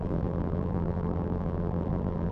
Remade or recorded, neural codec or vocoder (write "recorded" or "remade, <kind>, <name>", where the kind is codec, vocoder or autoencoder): remade, vocoder, BigVGAN v2